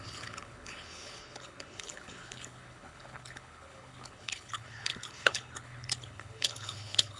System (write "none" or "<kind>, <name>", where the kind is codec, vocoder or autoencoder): codec, HILCodec